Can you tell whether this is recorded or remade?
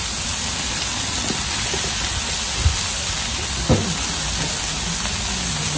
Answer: recorded